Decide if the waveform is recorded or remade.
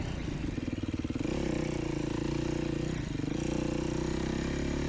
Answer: recorded